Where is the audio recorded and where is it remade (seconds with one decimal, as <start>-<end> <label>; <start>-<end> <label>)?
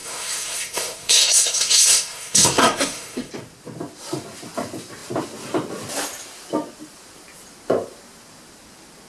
0.0-3.3 remade; 3.3-9.1 recorded